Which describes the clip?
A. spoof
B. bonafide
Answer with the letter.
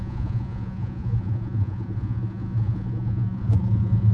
A